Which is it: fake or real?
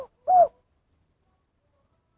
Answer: real